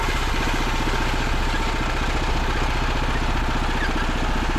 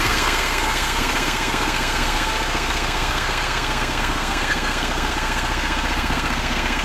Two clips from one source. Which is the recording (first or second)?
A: first